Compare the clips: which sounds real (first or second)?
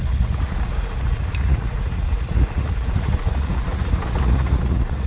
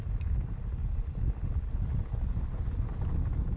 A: second